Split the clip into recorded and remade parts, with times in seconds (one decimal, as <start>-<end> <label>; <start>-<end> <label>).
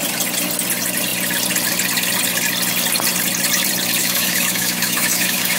0.0-4.0 recorded; 4.0-5.6 remade